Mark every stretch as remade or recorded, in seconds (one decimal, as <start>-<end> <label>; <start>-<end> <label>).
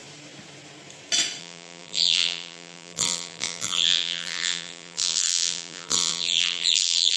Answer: 0.0-1.4 recorded; 1.4-7.2 remade